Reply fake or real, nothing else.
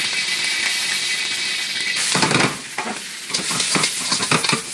real